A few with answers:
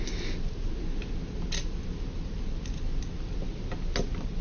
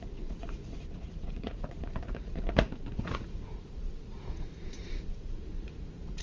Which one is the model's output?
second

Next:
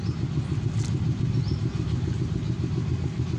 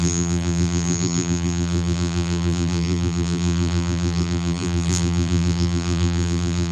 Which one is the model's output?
second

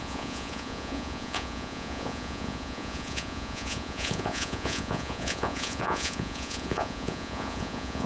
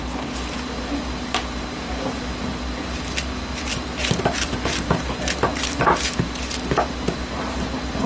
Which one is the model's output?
first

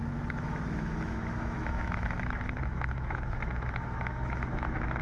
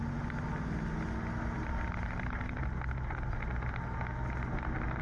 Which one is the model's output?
first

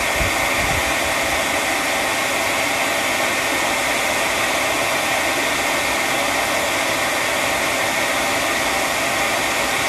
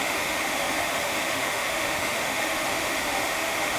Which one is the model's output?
second